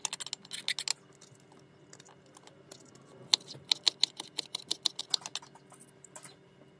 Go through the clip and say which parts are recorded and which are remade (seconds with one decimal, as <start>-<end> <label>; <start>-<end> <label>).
0.0-6.8 recorded